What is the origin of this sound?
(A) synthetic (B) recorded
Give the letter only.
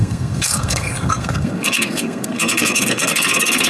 A